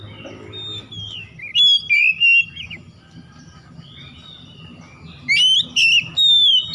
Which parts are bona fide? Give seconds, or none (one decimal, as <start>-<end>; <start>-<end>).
0.0-6.7